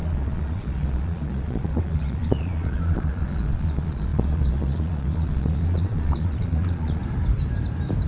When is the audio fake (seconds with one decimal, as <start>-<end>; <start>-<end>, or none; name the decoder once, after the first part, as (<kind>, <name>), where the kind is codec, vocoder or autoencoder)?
0.0-7.0 (vocoder, Vocos)